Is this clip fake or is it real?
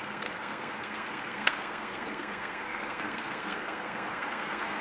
fake